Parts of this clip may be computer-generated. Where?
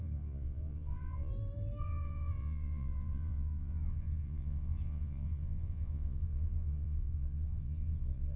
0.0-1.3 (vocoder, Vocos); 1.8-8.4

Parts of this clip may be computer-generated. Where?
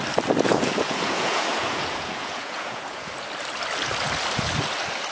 0.5-3.1 (vocoder, Vocos)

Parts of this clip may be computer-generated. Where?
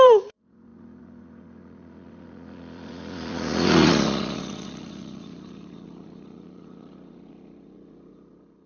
0.0-8.7 (vocoder, Vocos)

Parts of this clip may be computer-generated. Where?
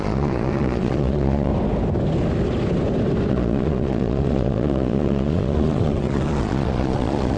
0.0-1.5 (vocoder, Vocos); 3.3-7.4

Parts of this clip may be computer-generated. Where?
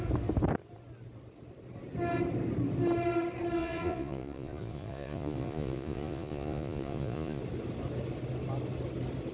3.6-7.4 (vocoder, Vocos)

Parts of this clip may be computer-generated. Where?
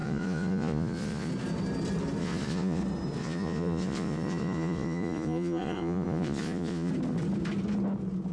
0.0-1.3 (vocoder, Vocos); 2.2-2.8; 3.2-6.9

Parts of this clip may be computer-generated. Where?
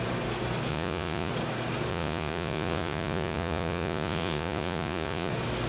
0.7-1.3 (vocoder, Vocos); 1.9-5.3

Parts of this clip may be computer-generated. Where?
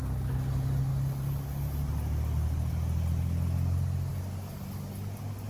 none